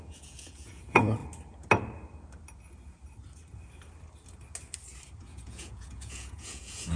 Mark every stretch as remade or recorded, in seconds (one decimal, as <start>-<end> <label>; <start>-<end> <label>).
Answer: 0.0-1.2 remade; 1.2-5.2 recorded; 5.2-7.0 remade